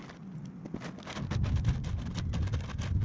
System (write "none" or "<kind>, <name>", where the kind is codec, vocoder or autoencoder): none